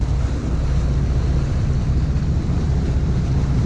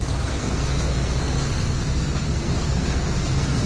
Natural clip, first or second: first